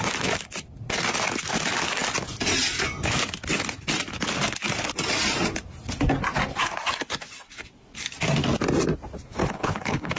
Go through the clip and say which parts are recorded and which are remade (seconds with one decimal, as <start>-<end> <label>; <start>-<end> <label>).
0.0-9.4 recorded; 9.4-10.2 remade